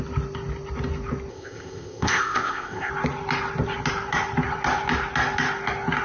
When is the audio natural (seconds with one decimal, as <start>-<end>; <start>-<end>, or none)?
0.0-1.3; 2.9-6.0